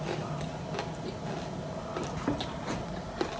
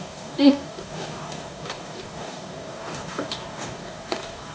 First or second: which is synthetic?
second